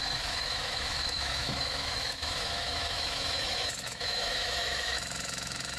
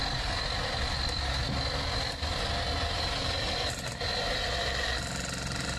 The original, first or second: second